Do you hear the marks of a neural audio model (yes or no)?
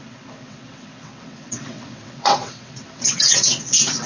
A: yes